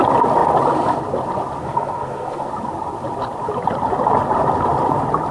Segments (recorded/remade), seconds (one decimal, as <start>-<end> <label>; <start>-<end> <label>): 0.0-1.6 recorded; 1.6-2.5 remade; 2.5-5.3 recorded